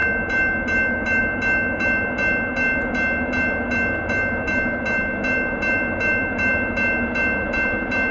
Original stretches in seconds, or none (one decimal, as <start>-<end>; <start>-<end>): 0.0-8.1